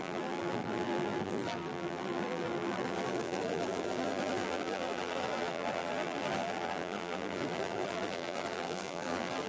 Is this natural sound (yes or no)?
no